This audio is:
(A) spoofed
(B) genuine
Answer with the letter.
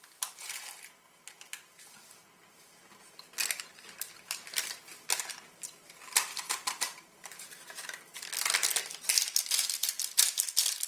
B